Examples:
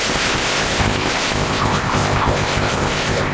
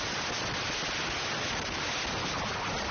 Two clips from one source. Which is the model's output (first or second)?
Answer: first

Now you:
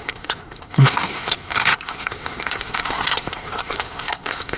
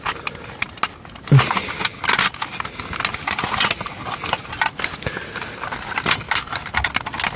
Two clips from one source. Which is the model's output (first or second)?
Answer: first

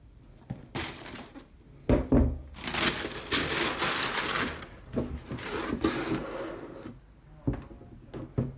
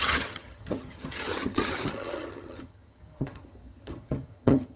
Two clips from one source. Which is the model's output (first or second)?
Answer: second